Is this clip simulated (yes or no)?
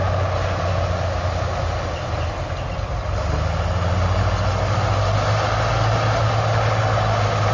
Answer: no